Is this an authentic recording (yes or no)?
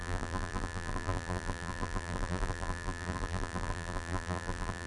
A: no